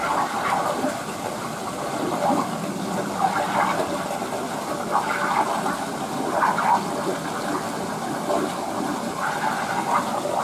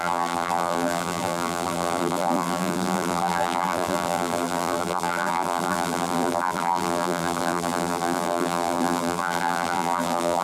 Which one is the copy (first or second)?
second